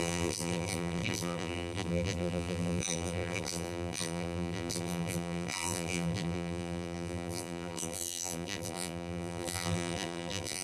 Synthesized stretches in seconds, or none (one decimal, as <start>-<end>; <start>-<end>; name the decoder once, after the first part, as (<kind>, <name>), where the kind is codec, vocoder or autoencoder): 0.0-10.6 (vocoder, BigVGAN v2)